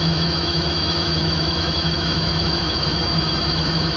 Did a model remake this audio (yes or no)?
yes